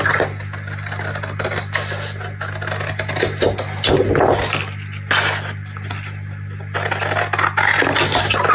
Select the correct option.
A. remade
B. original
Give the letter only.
B